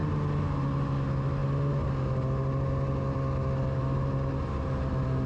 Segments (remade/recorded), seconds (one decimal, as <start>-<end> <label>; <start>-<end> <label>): 0.0-5.3 recorded